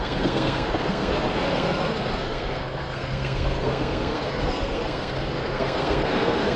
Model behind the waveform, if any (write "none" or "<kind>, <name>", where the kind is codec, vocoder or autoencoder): codec, SNAC